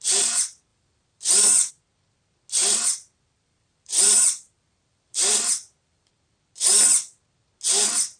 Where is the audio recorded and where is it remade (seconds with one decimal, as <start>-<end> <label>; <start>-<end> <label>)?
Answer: 0.0-0.7 recorded; 0.7-1.7 remade; 1.7-2.6 recorded; 2.6-6.1 remade; 6.1-8.2 recorded